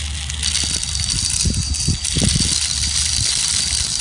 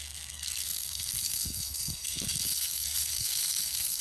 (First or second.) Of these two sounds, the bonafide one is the first